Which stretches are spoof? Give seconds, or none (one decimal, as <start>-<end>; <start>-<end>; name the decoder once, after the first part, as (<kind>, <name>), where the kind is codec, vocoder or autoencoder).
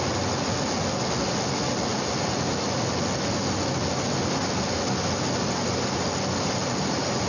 none